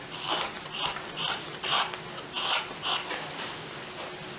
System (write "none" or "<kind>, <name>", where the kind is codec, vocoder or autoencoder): none